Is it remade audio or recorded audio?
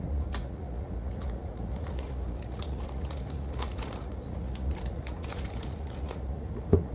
remade